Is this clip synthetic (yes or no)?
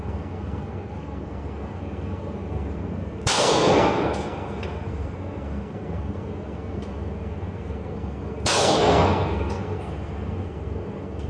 yes